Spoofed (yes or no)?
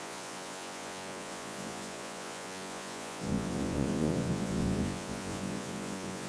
yes